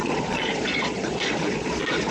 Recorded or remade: remade